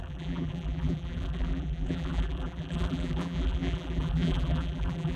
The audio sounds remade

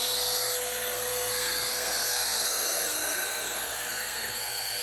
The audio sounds remade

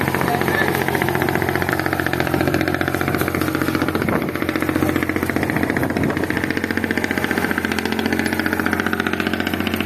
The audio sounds recorded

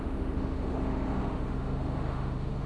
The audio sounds remade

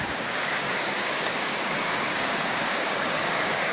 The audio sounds remade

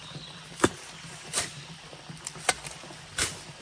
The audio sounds remade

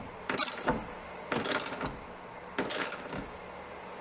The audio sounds recorded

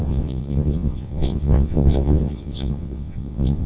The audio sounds remade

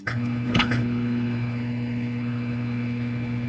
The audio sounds remade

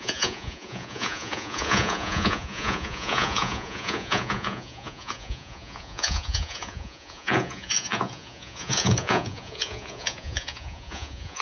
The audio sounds remade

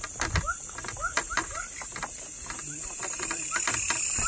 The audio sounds recorded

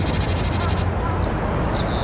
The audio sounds recorded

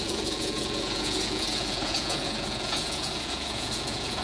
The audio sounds remade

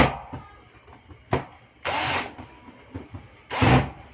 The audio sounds recorded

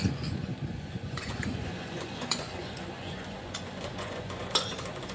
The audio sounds remade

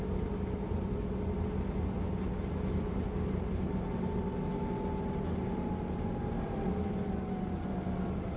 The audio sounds recorded